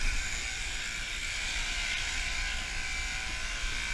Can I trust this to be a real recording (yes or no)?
yes